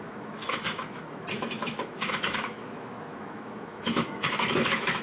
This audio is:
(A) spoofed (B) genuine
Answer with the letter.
A